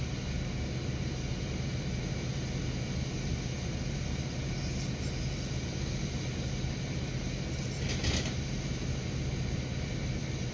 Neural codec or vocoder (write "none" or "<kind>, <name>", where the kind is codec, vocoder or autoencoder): none